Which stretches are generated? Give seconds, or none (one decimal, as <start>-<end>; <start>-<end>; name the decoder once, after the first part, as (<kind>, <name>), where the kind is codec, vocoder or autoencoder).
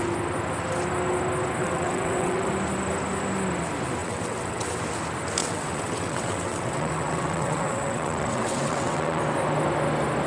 1.6-2.5 (vocoder, WaveNeXt); 4.0-4.8; 5.4-9.2